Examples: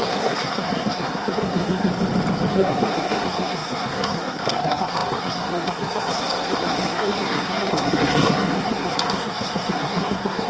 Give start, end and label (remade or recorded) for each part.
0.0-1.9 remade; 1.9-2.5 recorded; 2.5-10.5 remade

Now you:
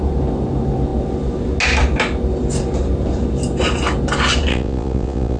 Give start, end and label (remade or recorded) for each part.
0.0-4.5 recorded; 4.5-5.4 remade